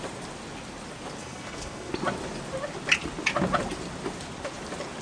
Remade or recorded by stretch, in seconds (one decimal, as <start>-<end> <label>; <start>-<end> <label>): 0.0-1.2 recorded; 1.2-1.9 remade; 1.9-5.0 recorded